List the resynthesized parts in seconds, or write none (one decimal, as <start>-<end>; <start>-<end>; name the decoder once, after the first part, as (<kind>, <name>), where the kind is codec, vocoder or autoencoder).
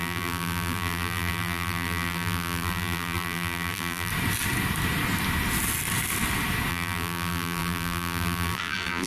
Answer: 0.0-4.1 (vocoder, BigVGAN v2); 6.7-9.1